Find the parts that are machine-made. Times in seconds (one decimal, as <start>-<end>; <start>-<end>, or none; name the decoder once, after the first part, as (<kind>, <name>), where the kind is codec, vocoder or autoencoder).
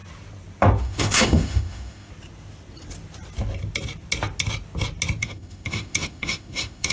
0.8-2.1 (autoencoder, DAC-VAE); 5.2-6.9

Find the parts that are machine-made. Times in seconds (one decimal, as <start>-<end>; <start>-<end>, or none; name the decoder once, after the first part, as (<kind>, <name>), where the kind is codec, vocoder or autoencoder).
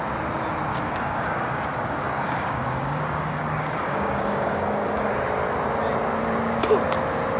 0.7-5.1 (codec, DAC)